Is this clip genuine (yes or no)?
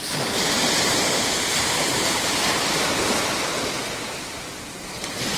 no